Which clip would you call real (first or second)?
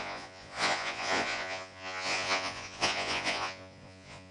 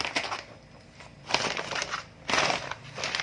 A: second